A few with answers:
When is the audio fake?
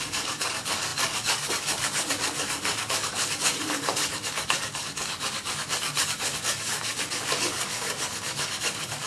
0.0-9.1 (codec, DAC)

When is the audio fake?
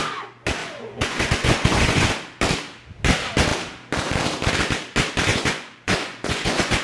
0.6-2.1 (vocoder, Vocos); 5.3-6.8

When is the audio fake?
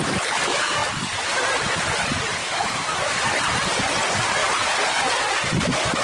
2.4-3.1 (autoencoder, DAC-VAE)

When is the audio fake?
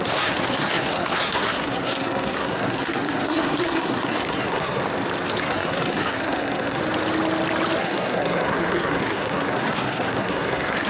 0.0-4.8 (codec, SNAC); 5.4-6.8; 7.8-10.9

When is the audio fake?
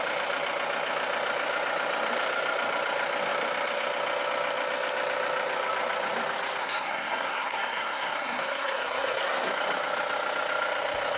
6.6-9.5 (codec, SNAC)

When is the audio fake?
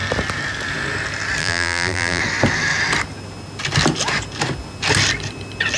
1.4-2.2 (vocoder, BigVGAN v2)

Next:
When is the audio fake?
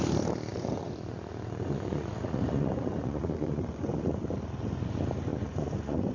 0.5-4.2 (vocoder, Vocos); 5.3-6.1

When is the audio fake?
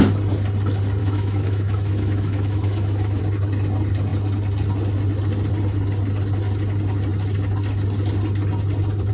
1.0-3.2 (autoencoder, DAC-VAE)